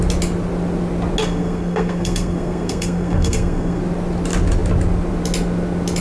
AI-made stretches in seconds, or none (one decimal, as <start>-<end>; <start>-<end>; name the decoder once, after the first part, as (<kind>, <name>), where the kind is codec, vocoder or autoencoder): 1.2-3.8 (codec, SNAC)